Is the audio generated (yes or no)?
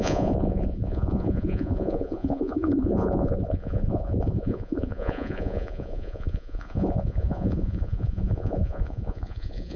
yes